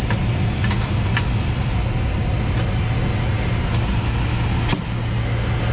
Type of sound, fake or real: real